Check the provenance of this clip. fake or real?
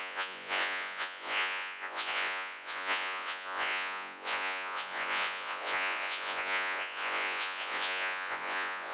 fake